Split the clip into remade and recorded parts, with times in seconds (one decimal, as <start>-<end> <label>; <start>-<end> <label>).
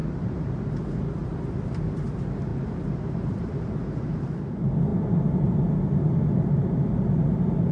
0.0-0.5 remade; 0.5-2.5 recorded; 2.5-4.5 remade; 4.5-7.7 recorded